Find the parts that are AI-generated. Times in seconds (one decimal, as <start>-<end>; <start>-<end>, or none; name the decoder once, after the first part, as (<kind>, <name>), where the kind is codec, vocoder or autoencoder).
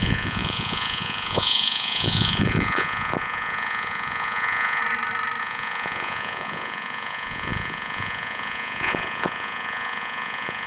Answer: 0.0-4.8 (vocoder, Vocos); 5.4-10.7